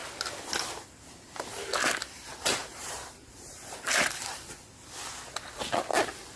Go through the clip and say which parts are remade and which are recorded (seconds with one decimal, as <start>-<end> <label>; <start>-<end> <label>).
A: 0.0-2.6 recorded; 2.6-4.5 remade; 4.5-6.4 recorded